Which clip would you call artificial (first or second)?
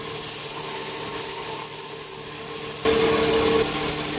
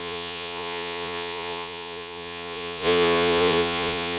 second